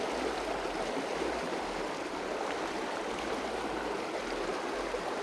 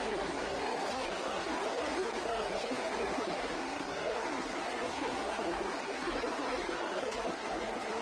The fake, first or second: second